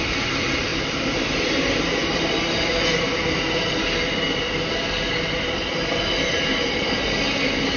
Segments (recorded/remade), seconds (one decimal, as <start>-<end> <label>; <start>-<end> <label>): 0.0-0.7 recorded; 0.7-1.4 remade; 1.4-6.3 recorded; 6.3-7.2 remade; 7.2-7.8 recorded